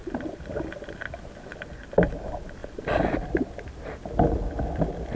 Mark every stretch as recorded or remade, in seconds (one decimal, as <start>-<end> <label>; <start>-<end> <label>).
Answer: 0.0-0.5 remade; 0.5-5.2 recorded